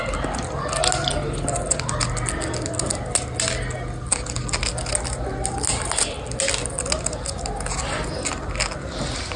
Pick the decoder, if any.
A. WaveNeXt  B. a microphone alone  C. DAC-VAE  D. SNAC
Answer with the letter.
B